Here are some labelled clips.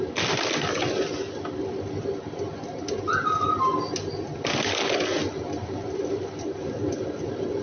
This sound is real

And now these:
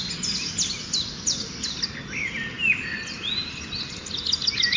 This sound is real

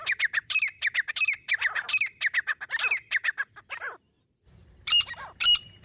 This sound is fake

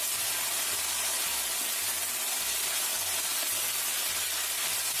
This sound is real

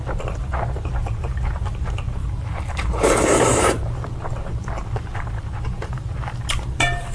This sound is fake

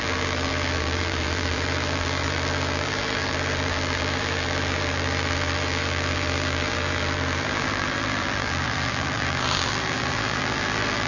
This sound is fake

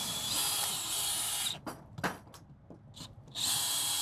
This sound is real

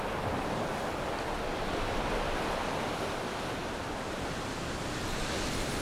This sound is fake